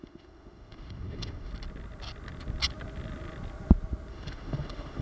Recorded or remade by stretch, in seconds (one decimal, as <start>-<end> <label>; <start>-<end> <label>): 0.0-1.5 remade; 1.5-4.1 recorded; 4.1-5.0 remade